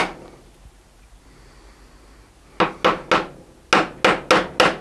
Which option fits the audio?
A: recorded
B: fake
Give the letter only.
A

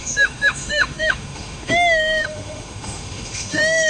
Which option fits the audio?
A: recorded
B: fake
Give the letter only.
B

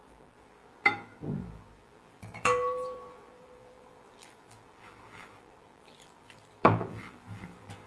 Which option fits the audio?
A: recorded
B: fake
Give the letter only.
B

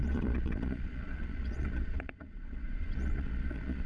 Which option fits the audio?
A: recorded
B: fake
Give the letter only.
B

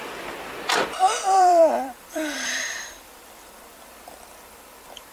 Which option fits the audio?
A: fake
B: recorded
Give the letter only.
A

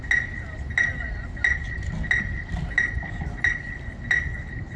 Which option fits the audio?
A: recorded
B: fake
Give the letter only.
A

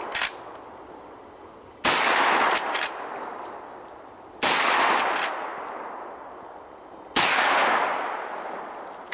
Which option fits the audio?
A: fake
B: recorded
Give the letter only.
B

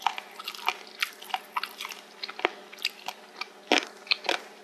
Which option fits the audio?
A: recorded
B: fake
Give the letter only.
A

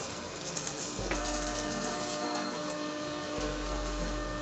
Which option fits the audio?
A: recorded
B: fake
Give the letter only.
B